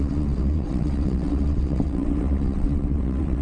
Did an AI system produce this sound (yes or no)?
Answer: yes